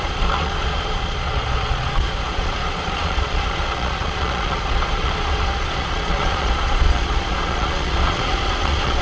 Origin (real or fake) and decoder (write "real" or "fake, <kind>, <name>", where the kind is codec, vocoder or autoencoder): fake, vocoder, Vocos